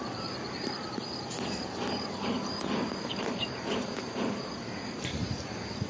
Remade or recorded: remade